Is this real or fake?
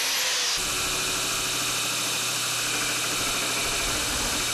real